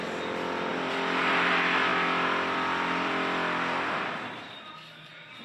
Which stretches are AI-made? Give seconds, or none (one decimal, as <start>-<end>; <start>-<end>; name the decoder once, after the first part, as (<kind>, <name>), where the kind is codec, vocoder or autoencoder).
0.7-1.5 (vocoder, BigVGAN v2); 1.9-4.7